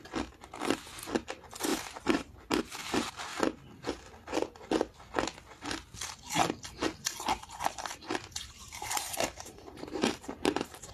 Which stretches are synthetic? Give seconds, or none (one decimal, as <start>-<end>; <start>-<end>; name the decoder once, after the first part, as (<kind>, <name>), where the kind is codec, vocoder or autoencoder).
1.7-2.6 (vocoder, BigVGAN v2); 8.6-10.9